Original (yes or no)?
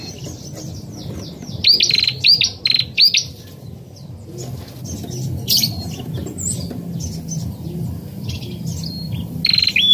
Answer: yes